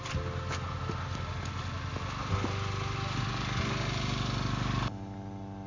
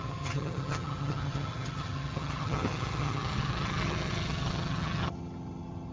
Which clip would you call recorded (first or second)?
first